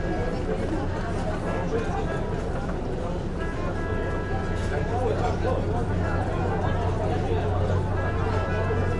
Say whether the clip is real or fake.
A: real